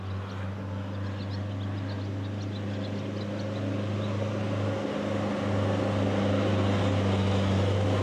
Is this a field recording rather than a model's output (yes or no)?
yes